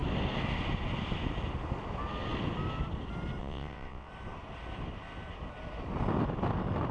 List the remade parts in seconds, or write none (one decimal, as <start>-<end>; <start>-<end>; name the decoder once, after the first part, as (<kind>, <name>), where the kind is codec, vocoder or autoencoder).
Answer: 3.4-4.1 (vocoder, WaveNeXt)